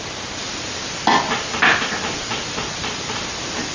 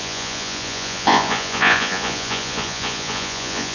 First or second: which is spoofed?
second